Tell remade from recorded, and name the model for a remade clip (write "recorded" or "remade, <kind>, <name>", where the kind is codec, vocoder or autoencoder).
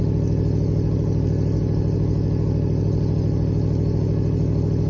recorded